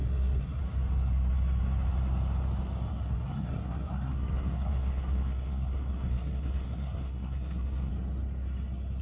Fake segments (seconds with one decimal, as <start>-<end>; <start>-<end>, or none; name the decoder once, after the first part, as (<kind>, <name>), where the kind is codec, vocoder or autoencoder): 0.0-0.6 (codec, SNAC); 2.9-7.9